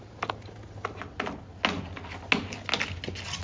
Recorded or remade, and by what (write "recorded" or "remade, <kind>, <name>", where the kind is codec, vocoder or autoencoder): recorded